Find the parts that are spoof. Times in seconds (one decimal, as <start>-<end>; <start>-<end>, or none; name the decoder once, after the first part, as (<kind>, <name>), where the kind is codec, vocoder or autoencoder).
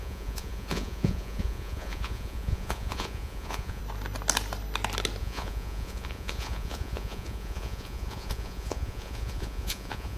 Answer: 0.0-3.8 (vocoder, Vocos); 5.2-10.2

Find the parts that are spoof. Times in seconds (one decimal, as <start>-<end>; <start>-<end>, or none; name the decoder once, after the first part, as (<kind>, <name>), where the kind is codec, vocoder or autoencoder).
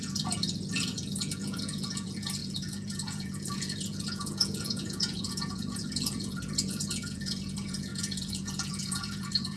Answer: 0.0-9.6 (vocoder, Vocos)